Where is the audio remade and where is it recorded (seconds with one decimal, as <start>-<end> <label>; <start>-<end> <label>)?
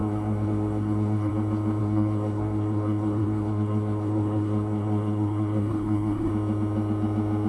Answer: 0.0-1.3 remade; 1.3-1.8 recorded; 1.8-6.3 remade; 6.3-7.5 recorded